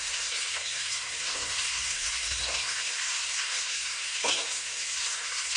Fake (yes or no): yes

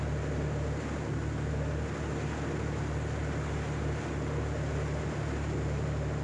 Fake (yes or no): no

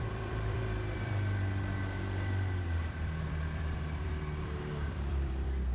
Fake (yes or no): yes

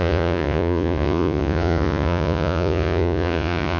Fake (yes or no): yes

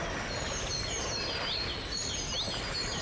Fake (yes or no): no